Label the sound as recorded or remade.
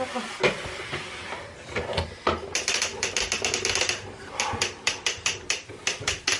recorded